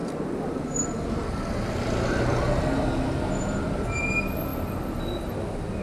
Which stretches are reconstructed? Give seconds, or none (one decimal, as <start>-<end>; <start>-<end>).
none